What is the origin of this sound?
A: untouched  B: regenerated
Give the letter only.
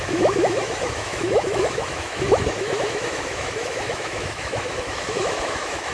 B